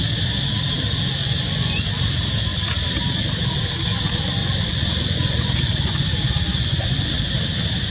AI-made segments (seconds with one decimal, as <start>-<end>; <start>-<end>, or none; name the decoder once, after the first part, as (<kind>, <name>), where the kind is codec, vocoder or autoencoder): 1.2-1.8 (vocoder, Vocos); 4.4-6.1; 6.5-7.1